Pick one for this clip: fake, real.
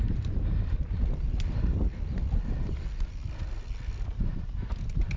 real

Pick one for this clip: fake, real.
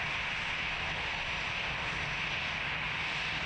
real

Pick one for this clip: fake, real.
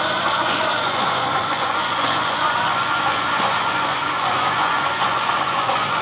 fake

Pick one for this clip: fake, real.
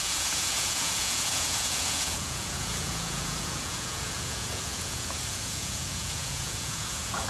fake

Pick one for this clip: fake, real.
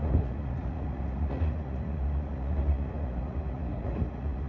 fake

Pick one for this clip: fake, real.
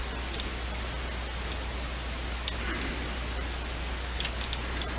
real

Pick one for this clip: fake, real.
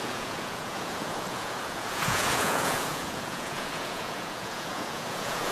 fake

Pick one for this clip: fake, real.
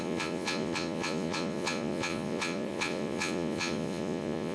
fake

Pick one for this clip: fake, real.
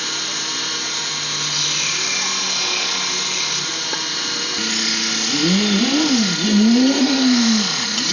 real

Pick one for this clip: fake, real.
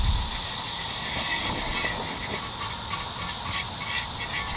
real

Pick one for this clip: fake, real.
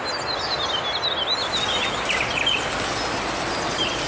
real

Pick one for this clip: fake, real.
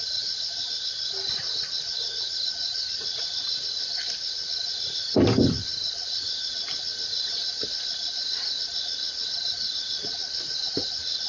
real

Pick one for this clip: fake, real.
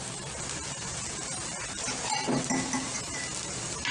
real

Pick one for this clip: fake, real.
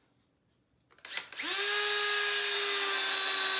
real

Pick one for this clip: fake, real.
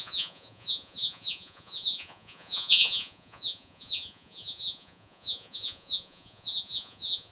fake